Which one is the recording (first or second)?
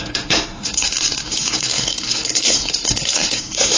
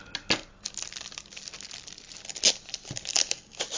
second